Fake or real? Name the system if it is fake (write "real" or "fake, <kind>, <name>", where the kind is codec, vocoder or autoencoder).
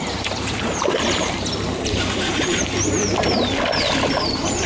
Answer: fake, vocoder, BigVGAN v2